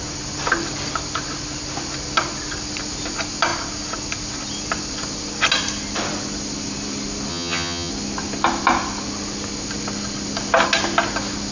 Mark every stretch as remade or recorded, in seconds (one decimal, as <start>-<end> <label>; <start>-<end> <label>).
0.0-7.3 recorded; 7.3-7.9 remade; 7.9-11.5 recorded